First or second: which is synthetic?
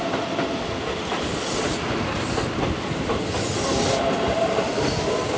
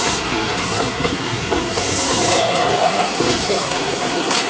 second